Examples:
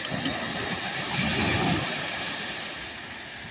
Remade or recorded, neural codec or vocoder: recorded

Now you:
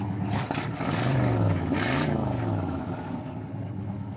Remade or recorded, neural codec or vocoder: remade, codec, DAC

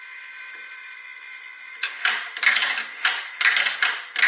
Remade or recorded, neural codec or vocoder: recorded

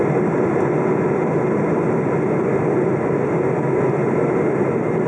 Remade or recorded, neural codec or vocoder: recorded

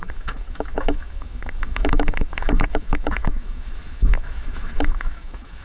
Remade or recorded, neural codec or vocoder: remade, autoencoder, DAC-VAE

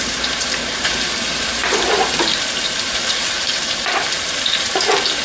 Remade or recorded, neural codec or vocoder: remade, vocoder, BigVGAN v2